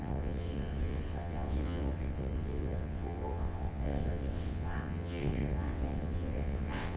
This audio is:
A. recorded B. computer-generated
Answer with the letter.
B